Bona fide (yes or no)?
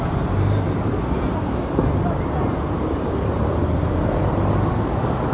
yes